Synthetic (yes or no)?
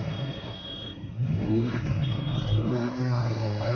yes